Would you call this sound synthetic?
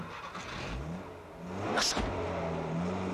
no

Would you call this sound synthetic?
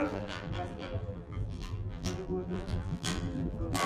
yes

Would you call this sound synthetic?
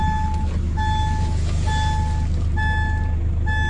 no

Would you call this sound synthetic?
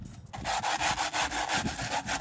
no